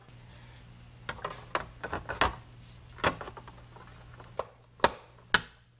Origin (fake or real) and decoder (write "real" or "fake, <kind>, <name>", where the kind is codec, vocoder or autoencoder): real